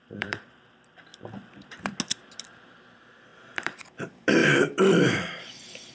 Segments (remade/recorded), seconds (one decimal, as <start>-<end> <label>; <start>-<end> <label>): 0.0-1.1 remade; 1.1-2.4 recorded; 2.4-5.9 remade